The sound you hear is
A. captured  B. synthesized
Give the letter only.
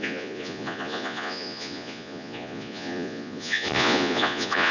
B